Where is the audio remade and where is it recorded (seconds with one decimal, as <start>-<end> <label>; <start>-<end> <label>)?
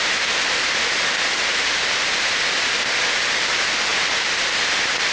0.0-5.1 recorded